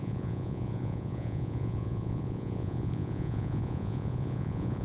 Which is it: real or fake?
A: fake